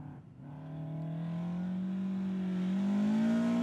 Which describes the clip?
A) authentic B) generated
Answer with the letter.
A